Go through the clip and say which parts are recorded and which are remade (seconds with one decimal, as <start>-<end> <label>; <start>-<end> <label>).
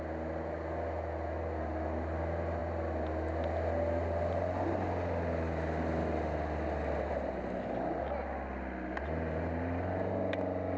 0.0-10.8 recorded